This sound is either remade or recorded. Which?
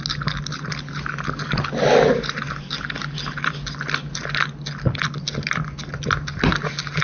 recorded